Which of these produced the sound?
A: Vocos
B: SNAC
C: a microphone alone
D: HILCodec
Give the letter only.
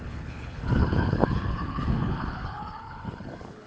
D